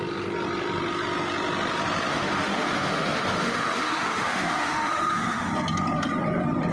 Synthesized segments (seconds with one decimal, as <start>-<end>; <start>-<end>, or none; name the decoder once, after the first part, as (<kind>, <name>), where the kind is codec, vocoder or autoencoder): 2.1-5.5 (autoencoder, DAC-VAE)